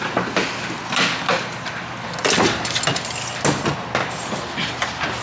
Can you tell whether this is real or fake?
real